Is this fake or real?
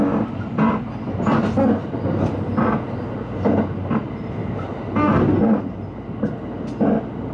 real